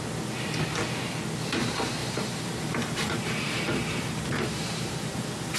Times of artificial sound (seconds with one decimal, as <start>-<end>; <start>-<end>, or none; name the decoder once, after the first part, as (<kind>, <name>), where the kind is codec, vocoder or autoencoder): 2.0-5.6 (vocoder, BigVGAN v2)